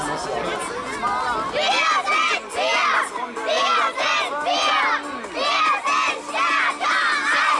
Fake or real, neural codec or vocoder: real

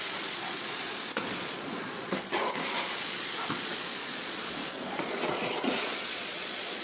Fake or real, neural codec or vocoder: fake, vocoder, Vocos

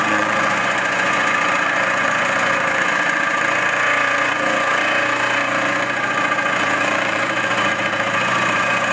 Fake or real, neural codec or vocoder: fake, vocoder, Vocos